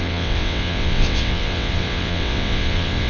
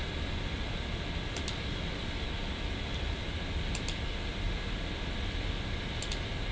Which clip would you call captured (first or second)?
second